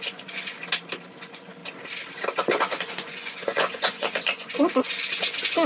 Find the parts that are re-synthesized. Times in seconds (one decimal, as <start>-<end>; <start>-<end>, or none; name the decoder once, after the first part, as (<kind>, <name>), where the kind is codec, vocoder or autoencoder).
0.0-0.6 (vocoder, Vocos); 1.2-1.6; 2.6-5.7